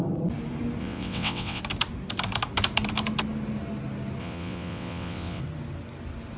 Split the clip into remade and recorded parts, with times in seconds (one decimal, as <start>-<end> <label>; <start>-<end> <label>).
0.0-0.8 recorded; 0.8-1.6 remade; 1.6-4.2 recorded; 4.2-5.4 remade; 5.4-6.4 recorded